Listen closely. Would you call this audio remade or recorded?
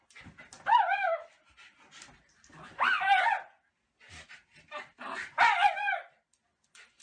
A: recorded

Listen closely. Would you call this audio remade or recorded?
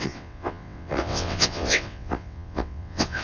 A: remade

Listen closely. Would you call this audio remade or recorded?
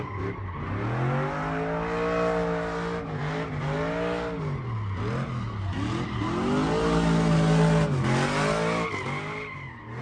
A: recorded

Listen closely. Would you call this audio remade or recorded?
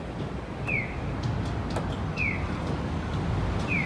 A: recorded